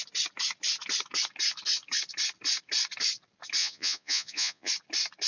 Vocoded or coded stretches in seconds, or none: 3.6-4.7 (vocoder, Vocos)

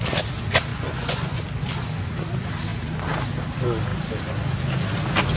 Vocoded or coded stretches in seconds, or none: 0.7-1.4 (vocoder, Vocos)

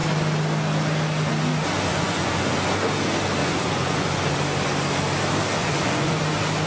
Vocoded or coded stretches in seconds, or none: 1.9-2.4 (vocoder, Vocos); 3.4-4.3; 5.6-6.2

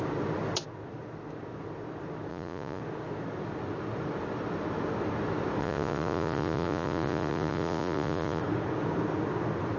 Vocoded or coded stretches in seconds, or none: 2.3-2.8 (vocoder, Vocos); 5.6-8.4

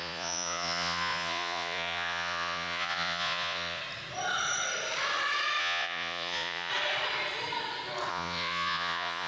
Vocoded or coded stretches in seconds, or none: 0.0-3.8 (vocoder, Vocos); 5.6-6.7; 8.1-9.3

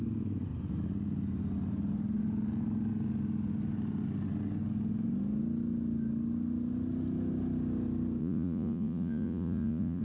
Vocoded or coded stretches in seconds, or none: 8.2-10.0 (vocoder, Vocos)